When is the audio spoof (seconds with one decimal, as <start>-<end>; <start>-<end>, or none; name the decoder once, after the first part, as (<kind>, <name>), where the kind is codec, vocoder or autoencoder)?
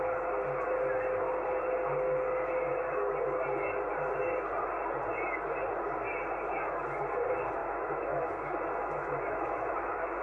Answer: 7.6-8.3 (autoencoder, DAC-VAE); 8.8-10.2